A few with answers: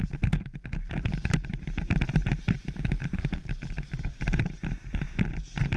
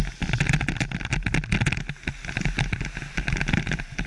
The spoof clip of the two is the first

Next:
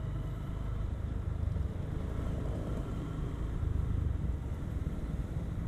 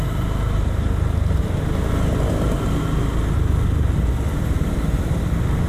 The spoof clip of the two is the first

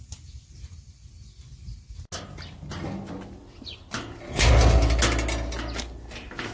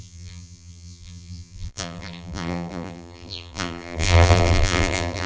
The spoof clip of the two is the second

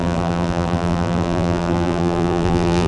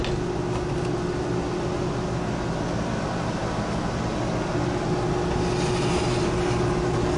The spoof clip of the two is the first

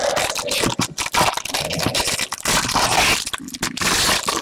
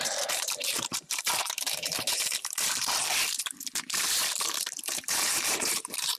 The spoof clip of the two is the second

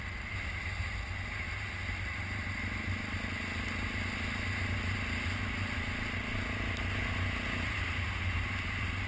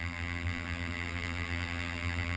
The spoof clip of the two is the second